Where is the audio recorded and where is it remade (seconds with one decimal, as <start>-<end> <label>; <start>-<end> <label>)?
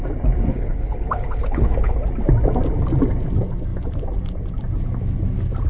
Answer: 0.0-0.5 recorded; 0.5-2.0 remade; 2.0-5.7 recorded